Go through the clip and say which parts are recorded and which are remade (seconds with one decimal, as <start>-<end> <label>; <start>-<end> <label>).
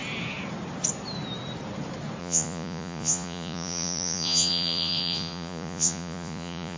0.0-2.2 recorded; 2.2-6.8 remade